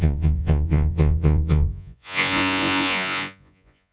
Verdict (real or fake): fake